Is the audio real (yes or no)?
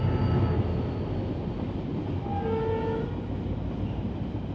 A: yes